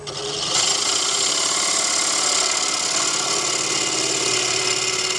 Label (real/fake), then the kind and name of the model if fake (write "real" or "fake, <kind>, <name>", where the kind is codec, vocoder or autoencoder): real